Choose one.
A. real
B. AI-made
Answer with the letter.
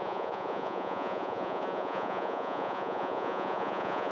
B